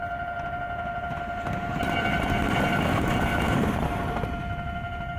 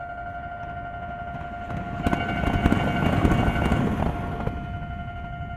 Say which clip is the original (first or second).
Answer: second